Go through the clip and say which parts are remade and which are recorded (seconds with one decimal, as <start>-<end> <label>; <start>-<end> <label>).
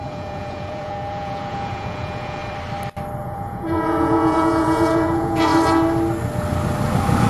0.0-2.4 remade; 2.4-3.2 recorded; 3.2-5.5 remade; 5.5-7.3 recorded